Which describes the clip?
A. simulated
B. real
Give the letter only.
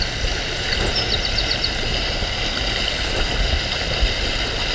B